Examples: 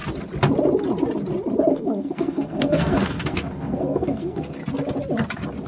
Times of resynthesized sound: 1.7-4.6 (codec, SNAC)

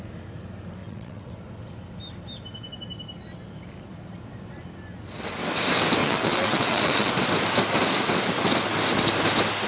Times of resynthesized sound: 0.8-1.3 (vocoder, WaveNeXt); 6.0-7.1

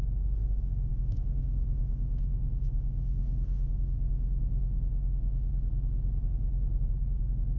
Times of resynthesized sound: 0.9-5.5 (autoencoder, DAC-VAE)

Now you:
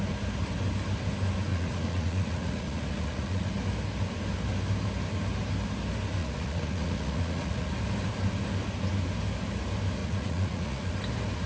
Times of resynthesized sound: 1.5-3.5 (vocoder, Vocos); 6.2-7.7; 10.0-10.9

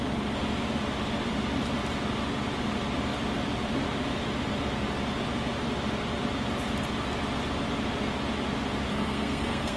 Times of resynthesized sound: 8.9-9.8 (codec, SNAC)